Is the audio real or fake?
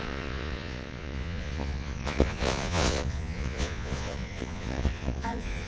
fake